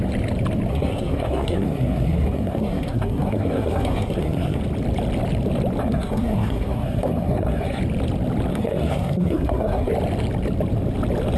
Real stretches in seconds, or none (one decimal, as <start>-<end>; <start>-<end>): 0.0-0.7; 4.6-5.8; 7.8-8.5; 9.9-11.4